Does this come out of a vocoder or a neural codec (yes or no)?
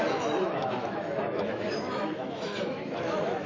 yes